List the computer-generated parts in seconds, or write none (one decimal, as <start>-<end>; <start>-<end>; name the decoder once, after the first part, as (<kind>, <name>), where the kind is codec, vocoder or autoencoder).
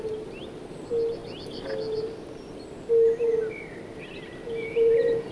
4.4-5.3 (vocoder, Vocos)